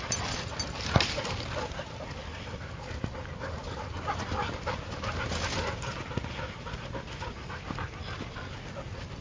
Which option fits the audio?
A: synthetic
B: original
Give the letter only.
B